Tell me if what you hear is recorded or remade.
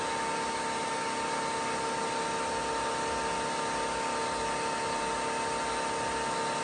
recorded